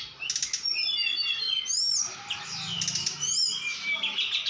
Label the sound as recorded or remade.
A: recorded